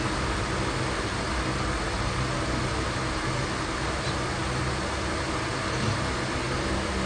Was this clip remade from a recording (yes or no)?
no